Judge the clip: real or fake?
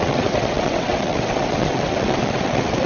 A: fake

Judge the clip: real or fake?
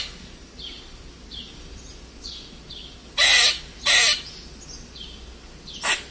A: real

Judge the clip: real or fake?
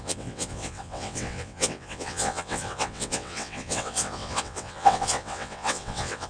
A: fake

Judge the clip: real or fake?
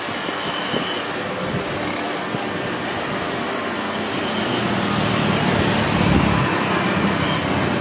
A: real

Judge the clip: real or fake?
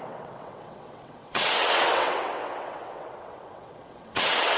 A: fake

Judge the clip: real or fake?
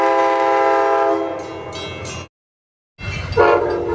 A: real